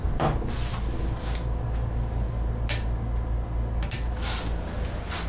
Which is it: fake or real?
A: real